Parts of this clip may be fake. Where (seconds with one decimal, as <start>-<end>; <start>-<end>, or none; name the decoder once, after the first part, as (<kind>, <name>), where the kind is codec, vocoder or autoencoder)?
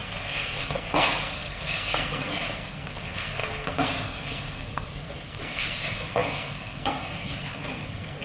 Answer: 0.0-8.2 (codec, SNAC)